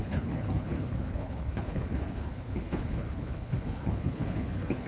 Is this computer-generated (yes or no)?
yes